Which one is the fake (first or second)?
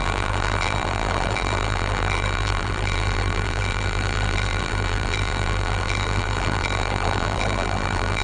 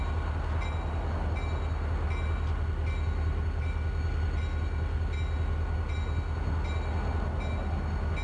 first